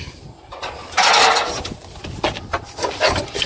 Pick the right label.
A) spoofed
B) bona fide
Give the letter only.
B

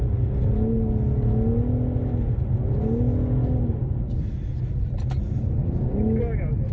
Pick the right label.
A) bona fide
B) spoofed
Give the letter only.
A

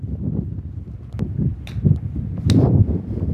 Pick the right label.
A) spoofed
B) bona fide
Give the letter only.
B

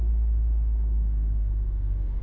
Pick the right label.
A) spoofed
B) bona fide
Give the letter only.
A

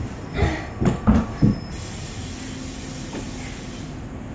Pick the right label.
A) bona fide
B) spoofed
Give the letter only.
A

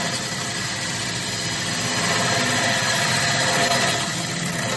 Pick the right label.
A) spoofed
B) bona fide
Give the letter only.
B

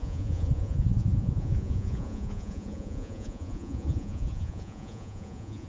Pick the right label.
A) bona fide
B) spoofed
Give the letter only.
B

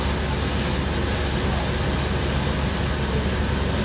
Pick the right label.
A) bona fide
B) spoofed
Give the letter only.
A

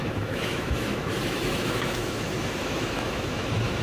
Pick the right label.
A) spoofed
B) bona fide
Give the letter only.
A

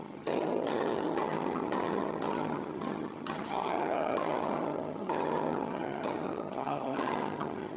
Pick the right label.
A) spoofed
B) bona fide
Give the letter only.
A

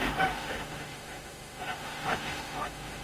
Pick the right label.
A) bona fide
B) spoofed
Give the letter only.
B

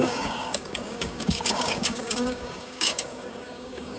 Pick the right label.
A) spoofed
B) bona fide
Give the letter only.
A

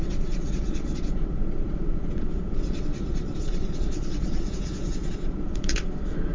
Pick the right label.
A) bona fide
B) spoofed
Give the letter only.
B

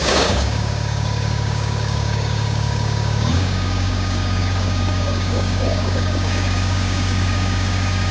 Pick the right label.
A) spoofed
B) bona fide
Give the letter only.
A